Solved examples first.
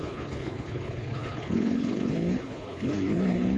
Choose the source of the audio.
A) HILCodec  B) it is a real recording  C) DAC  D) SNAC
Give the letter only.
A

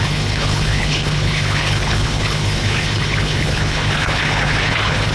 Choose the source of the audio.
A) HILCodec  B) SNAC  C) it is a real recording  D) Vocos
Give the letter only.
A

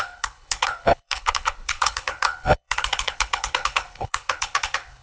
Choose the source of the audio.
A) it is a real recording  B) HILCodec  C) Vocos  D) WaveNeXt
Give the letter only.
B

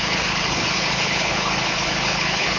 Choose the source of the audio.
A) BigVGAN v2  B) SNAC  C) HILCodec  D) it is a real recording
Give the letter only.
C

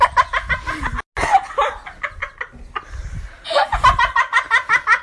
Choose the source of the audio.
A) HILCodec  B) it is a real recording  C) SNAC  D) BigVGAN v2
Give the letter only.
B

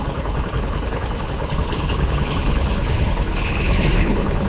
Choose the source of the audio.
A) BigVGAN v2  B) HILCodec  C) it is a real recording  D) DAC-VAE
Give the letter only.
B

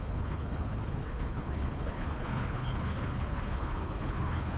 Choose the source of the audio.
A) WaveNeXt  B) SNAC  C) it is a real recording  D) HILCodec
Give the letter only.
D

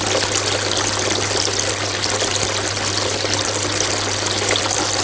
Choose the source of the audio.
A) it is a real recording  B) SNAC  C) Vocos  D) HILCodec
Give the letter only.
A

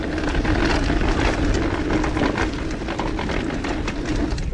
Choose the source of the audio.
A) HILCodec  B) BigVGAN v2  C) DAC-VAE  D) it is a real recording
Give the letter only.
D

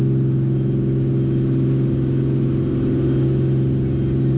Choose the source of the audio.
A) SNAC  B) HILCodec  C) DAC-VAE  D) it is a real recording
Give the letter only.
D